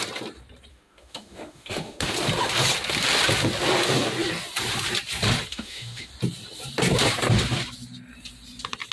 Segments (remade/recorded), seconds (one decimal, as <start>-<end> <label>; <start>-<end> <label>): 0.0-0.7 recorded; 0.7-2.1 remade; 2.1-5.5 recorded; 5.5-6.1 remade; 6.1-8.9 recorded